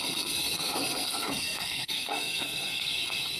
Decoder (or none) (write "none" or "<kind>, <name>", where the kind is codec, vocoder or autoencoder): codec, SNAC